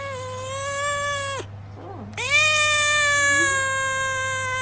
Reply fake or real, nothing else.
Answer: real